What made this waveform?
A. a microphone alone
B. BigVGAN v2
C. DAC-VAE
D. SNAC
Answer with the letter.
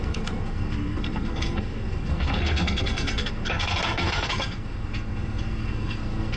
D